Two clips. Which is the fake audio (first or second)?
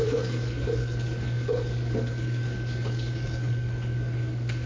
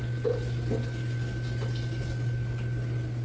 first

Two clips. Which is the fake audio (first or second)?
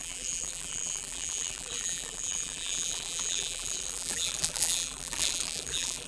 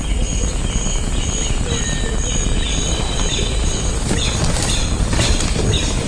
first